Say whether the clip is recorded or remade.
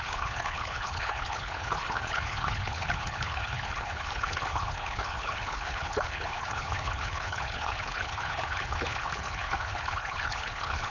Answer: remade